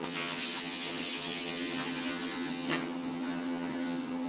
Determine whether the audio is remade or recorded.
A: remade